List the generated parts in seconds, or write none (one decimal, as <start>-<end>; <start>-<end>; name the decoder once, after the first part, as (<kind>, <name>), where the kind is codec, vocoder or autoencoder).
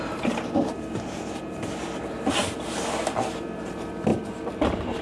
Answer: none